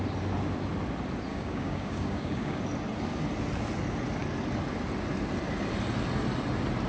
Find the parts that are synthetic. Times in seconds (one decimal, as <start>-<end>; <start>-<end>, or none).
1.3-2.6

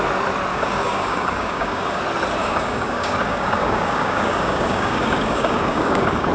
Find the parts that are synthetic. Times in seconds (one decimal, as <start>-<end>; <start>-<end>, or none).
0.5-2.0; 2.4-6.3

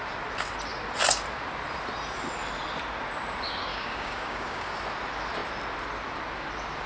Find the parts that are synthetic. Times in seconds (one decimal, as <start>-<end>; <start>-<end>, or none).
3.7-4.8

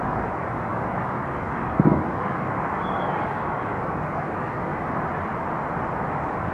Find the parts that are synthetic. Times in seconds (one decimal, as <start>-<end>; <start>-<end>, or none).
0.0-4.7; 6.1-6.5

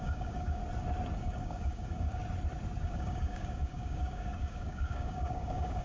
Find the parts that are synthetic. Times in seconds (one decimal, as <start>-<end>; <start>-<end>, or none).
0.0-0.6; 1.2-2.2; 2.8-5.8